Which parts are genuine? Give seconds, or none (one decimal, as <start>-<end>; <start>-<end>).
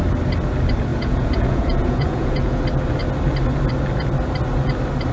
0.0-0.9; 2.6-5.1